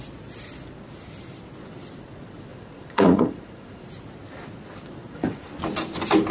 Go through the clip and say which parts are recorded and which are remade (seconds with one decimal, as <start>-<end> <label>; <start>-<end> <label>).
0.0-2.5 recorded; 2.5-3.9 remade; 3.9-5.0 recorded; 5.0-5.5 remade; 5.5-6.3 recorded